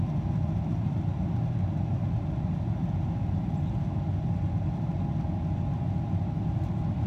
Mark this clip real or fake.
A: real